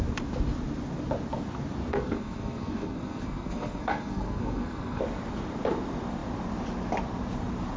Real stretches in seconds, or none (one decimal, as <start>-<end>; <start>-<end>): 0.0-1.9; 5.0-7.8

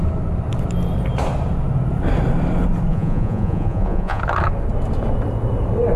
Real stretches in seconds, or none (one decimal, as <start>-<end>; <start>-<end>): 0.0-2.9; 4.2-6.0

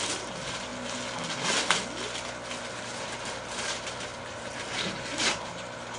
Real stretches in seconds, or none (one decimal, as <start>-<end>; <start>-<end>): 0.7-2.6

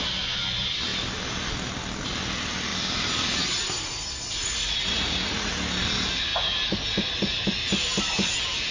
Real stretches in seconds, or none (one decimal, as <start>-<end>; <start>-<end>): 0.0-4.4; 5.5-8.7

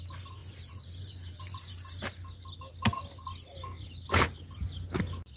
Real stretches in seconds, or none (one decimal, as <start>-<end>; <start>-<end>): 0.0-0.4; 1.7-5.4